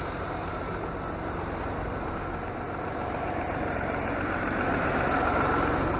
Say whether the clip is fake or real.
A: fake